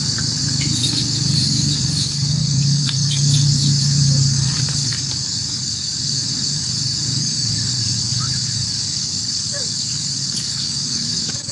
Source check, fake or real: fake